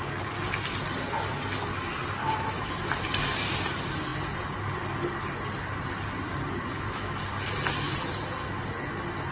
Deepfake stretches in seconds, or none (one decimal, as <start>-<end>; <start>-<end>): 2.2-3.0; 6.7-7.2